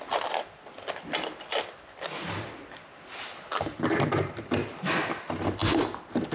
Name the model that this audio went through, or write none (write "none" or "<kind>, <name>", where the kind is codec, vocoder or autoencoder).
none